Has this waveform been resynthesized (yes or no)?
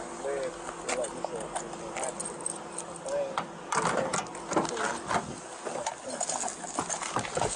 no